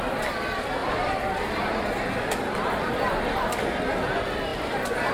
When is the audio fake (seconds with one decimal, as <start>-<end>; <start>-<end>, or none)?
0.8-3.9; 4.5-5.1